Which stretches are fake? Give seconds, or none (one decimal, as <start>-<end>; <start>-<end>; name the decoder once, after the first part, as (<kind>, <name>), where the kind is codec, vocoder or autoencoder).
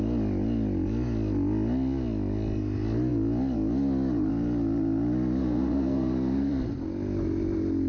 5.4-6.5 (codec, SNAC)